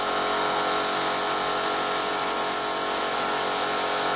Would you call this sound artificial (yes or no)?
yes